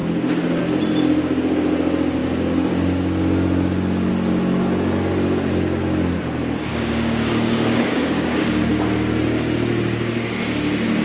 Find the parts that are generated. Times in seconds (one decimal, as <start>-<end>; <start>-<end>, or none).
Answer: 6.7-8.6